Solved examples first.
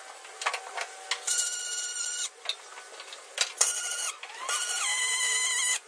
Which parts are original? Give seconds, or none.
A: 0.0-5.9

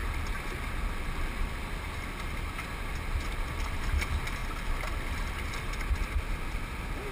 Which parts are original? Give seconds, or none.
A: 0.0-7.1

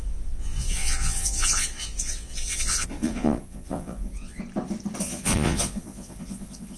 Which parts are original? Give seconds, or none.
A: 4.4-5.0

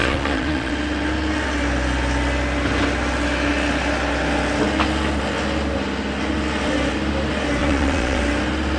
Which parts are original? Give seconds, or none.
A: 0.7-7.6; 8.2-8.8

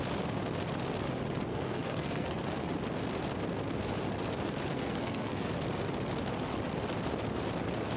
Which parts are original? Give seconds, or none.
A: 0.0-1.5; 2.4-4.7; 5.5-8.0

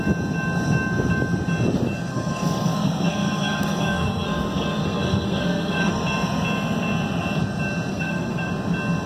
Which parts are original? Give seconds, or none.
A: 0.0-2.1; 5.9-7.9; 8.5-9.1

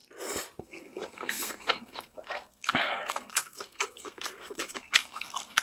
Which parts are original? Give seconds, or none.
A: 0.0-0.6

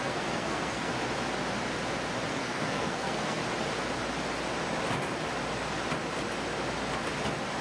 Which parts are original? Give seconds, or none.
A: 0.9-2.3; 3.4-7.6